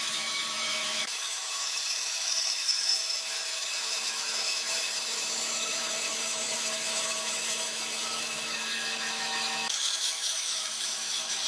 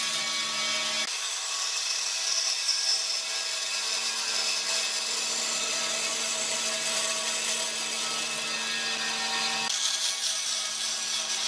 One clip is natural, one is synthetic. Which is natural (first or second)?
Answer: second